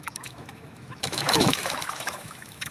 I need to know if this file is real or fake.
fake